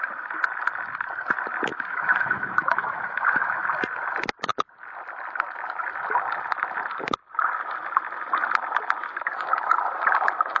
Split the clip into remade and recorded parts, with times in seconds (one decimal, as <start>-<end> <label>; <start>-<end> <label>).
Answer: 0.0-1.7 recorded; 1.7-3.6 remade; 3.6-10.6 recorded